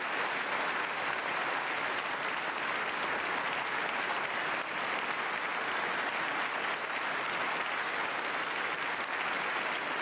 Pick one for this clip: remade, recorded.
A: recorded